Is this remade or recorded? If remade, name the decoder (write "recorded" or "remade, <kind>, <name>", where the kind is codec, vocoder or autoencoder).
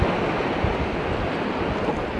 recorded